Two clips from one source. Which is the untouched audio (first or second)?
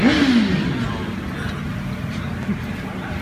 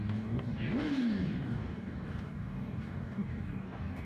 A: first